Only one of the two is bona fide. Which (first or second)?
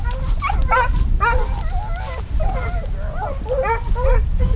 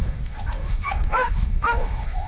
first